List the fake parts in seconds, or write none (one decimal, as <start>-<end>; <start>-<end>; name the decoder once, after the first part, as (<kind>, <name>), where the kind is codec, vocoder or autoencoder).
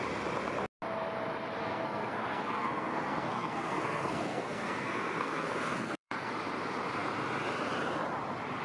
1.6-6.3 (codec, SNAC)